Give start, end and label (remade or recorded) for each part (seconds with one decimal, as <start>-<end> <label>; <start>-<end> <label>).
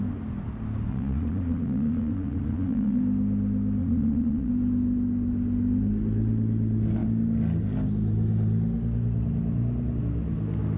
0.0-0.9 recorded; 0.9-3.0 remade; 3.0-3.8 recorded; 3.8-4.5 remade; 4.5-10.8 recorded